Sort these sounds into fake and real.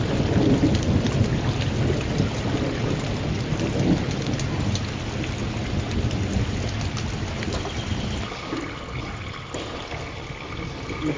real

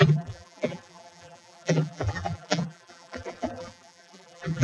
fake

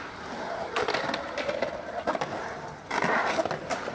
real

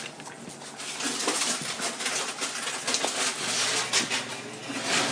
real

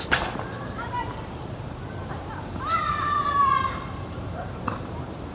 fake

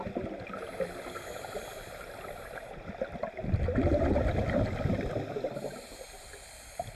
real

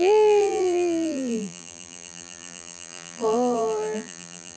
fake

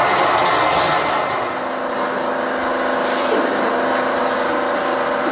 real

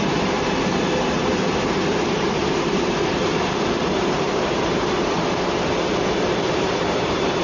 fake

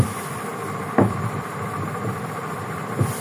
fake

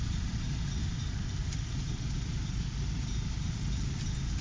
fake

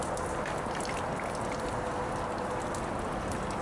real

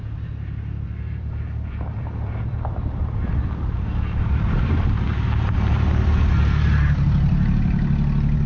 fake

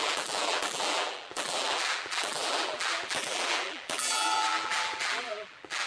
fake